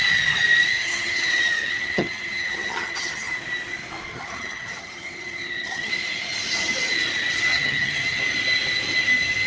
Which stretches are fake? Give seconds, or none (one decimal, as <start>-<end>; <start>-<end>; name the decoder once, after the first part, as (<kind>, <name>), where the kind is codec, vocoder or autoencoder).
0.7-3.3 (vocoder, HiFi-GAN); 4.1-5.9; 7.5-8.2